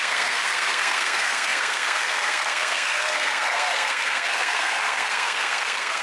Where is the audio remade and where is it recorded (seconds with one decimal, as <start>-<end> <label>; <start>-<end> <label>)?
0.0-6.0 remade